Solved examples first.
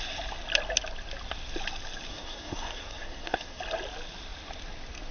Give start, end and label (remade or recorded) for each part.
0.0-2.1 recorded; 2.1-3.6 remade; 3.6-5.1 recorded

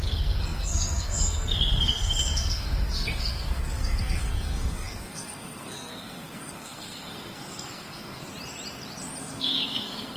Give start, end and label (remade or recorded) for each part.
0.0-8.3 remade; 8.3-9.2 recorded; 9.2-10.2 remade

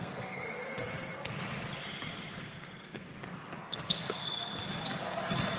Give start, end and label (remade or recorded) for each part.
0.0-0.4 remade; 0.4-2.4 recorded; 2.4-3.1 remade; 3.1-3.6 recorded; 3.6-4.2 remade; 4.2-5.6 recorded

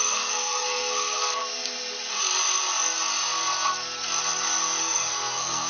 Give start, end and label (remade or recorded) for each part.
0.0-1.4 remade; 1.4-4.8 recorded; 4.8-5.7 remade

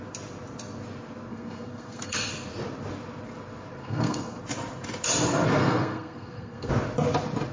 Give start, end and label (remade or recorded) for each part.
0.0-1.3 recorded; 1.3-2.3 remade; 2.3-3.8 recorded; 3.8-4.4 remade; 4.4-5.6 recorded; 5.6-6.7 remade; 6.7-7.5 recorded

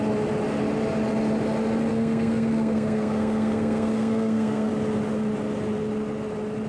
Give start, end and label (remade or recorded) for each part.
0.0-1.9 recorded; 1.9-4.7 remade; 4.7-6.7 recorded

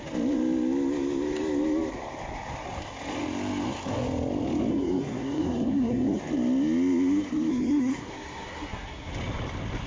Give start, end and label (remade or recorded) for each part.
0.0-4.7 recorded; 4.7-6.2 remade; 6.2-7.5 recorded; 7.5-9.1 remade; 9.1-9.9 recorded

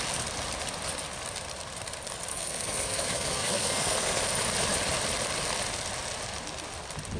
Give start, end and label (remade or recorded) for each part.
0.0-2.3 recorded; 2.3-4.2 remade; 4.2-7.2 recorded